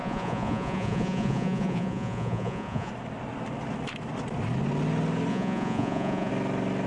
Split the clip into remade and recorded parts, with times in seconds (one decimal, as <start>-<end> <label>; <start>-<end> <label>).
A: 0.0-2.9 remade; 2.9-5.3 recorded; 5.3-6.3 remade; 6.3-6.9 recorded